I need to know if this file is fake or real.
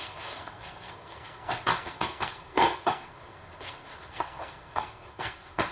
fake